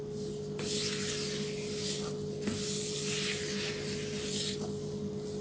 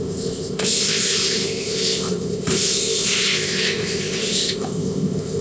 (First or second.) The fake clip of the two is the second